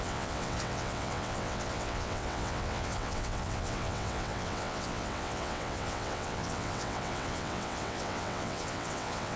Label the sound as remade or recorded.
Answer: remade